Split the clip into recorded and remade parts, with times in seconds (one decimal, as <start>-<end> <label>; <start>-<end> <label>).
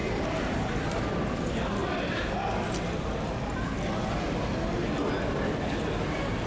0.0-1.0 remade; 1.0-6.5 recorded